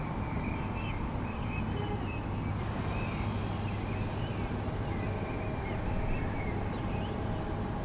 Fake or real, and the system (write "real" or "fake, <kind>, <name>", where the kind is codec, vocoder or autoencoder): real